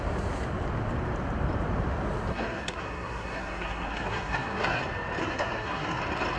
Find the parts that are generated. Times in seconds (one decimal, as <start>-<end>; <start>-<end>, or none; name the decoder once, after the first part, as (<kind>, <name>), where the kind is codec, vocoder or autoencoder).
2.3-4.8 (codec, SNAC); 5.2-6.0